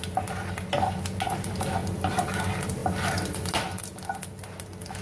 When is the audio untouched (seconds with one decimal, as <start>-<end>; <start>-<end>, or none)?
0.0-1.8; 2.4-2.8; 3.8-5.0